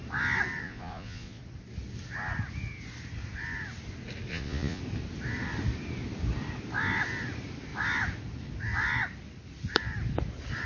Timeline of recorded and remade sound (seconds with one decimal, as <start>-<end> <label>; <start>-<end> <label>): 0.0-0.6 recorded; 0.6-1.4 remade; 1.4-4.3 recorded; 4.3-4.8 remade; 4.8-10.7 recorded

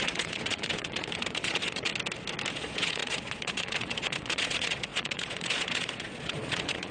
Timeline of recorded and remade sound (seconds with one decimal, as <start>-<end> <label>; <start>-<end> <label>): 0.0-1.9 remade; 1.9-2.5 recorded; 2.5-6.9 remade

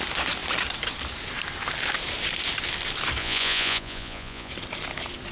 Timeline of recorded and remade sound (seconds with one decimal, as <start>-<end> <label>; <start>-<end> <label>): 0.0-3.2 recorded; 3.2-4.5 remade; 4.5-5.3 recorded